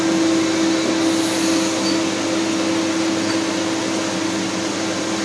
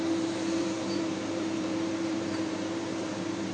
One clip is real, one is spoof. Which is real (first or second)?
first